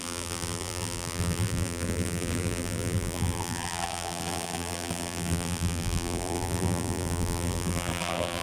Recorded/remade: remade